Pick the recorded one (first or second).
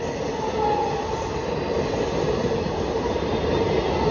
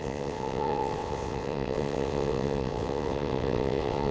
first